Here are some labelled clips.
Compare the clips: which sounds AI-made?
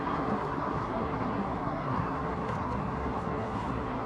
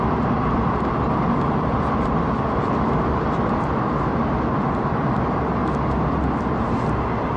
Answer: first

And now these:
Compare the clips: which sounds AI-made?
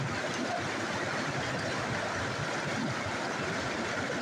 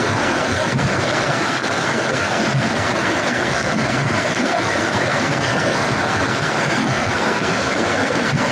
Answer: second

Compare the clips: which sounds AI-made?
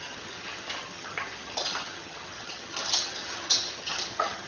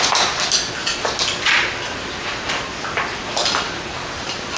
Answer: first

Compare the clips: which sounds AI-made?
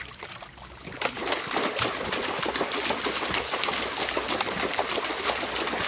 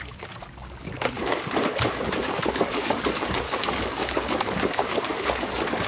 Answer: second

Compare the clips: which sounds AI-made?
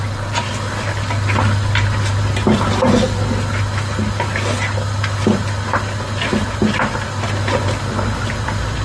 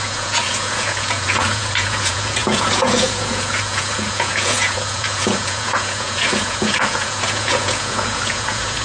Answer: second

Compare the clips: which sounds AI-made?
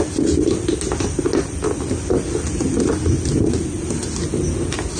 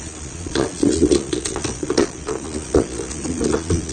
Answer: second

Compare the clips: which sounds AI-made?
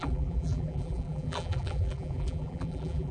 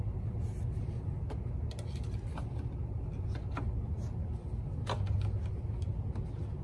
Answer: first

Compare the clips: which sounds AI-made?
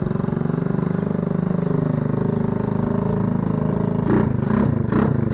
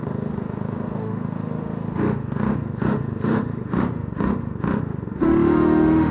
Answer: second